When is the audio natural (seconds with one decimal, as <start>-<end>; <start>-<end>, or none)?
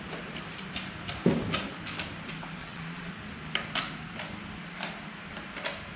0.0-2.6; 3.1-6.0